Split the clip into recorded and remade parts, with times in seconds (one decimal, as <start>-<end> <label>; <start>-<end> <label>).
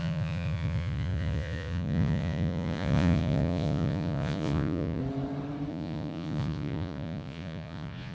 0.0-5.0 remade; 5.0-5.7 recorded; 5.7-8.1 remade